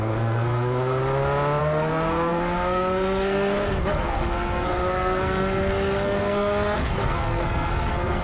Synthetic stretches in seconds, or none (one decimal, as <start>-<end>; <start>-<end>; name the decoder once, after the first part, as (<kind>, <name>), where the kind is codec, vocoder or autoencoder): 0.0-1.0 (codec, SNAC); 1.6-8.2